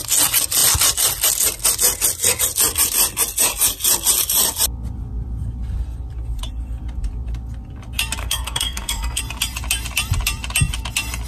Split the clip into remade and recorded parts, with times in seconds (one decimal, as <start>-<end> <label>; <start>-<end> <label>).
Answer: 0.0-8.2 recorded; 8.2-9.2 remade; 9.2-11.3 recorded